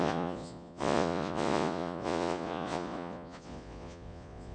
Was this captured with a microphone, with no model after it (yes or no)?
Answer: no